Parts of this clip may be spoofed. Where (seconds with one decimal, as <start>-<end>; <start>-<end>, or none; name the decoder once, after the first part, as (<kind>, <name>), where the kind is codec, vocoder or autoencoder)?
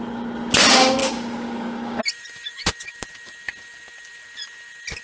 1.0-2.0 (codec, DAC)